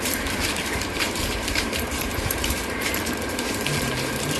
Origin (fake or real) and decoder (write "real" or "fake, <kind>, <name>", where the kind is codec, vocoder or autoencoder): fake, vocoder, BigVGAN v2